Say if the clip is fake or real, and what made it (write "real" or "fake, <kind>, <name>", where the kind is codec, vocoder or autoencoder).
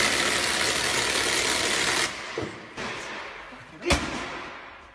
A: real